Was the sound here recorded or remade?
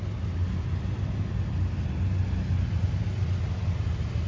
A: recorded